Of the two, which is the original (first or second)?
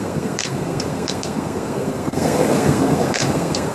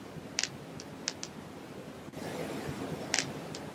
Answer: second